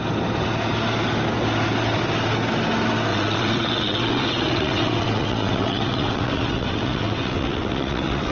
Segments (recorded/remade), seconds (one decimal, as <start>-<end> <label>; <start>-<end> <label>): 0.0-3.1 recorded; 3.1-8.3 remade